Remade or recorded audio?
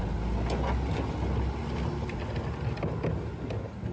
recorded